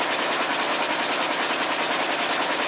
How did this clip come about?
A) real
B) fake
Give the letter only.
A